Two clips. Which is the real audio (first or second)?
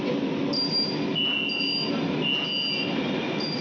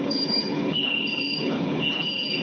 first